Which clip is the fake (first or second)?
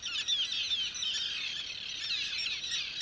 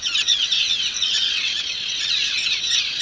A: second